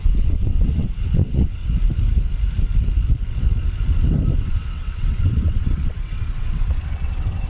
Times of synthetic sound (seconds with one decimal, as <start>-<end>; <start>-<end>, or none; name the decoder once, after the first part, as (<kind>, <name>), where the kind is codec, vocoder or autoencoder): 0.0-1.6 (vocoder, WaveNeXt); 4.4-7.5